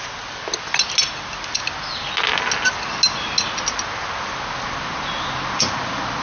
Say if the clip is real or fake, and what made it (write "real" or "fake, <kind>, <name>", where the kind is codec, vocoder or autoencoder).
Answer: real